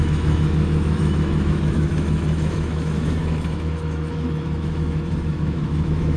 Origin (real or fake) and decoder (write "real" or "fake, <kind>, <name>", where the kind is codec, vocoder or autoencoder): fake, autoencoder, DAC-VAE